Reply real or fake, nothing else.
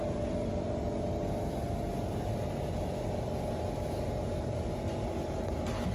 real